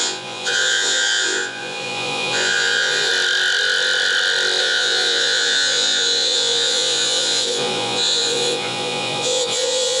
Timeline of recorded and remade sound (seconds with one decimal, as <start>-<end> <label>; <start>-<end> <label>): 0.0-3.1 remade; 3.1-4.6 recorded; 4.6-10.0 remade

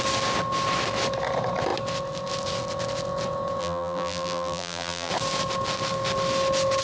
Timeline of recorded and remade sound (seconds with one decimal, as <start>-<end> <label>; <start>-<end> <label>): 0.0-3.6 recorded; 3.6-5.1 remade; 5.1-6.8 recorded

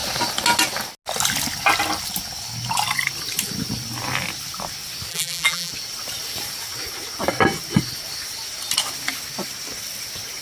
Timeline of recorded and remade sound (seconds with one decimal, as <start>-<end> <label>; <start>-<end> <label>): 0.0-5.1 recorded; 5.1-5.7 remade; 5.7-10.4 recorded